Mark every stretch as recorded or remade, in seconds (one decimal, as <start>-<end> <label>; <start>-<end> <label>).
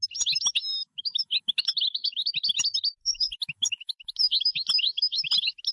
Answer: 0.0-0.7 recorded; 0.7-2.3 remade; 2.3-3.0 recorded; 3.0-4.4 remade; 4.4-5.7 recorded